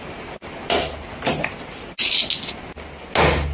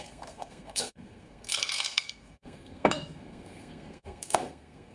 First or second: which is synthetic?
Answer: second